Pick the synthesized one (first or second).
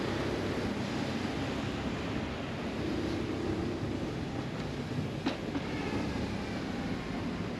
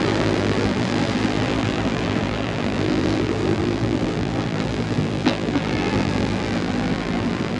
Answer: second